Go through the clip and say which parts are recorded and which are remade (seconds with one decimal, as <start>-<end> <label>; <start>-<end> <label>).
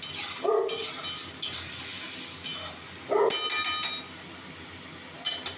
0.0-5.6 recorded